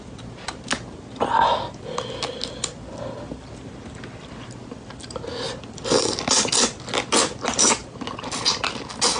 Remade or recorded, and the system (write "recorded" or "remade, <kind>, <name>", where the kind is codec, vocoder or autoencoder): recorded